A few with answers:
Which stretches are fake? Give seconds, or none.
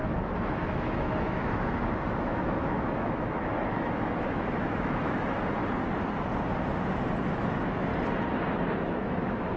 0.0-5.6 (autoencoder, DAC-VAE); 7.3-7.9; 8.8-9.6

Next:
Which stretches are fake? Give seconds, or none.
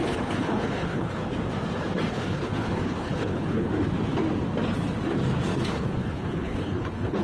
0.0-1.2 (codec, HILCodec); 2.1-3.7; 5.7-7.2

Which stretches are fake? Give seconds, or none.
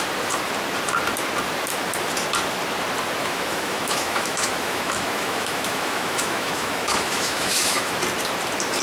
3.2-8.0 (autoencoder, DAC-VAE)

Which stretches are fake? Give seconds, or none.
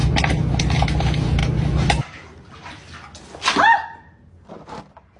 none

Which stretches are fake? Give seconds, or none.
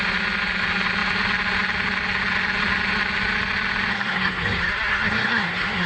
3.9-5.9 (codec, SNAC)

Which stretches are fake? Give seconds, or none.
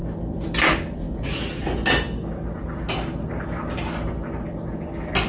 none